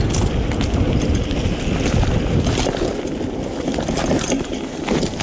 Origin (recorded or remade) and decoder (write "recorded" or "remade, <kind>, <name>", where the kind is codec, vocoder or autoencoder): recorded